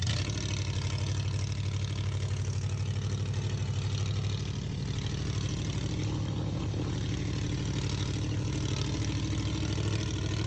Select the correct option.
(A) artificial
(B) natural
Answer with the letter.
B